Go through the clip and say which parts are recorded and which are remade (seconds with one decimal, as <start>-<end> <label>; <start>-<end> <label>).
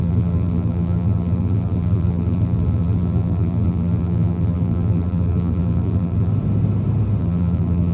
0.0-6.3 remade; 6.3-7.2 recorded; 7.2-7.9 remade